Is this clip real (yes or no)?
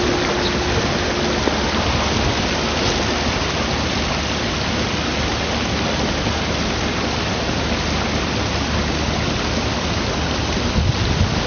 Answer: yes